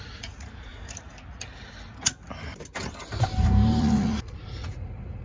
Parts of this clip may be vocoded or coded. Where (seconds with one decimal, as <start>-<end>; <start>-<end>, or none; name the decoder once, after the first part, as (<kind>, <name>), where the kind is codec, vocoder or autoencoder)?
0.0-0.7 (vocoder, Vocos); 3.8-5.2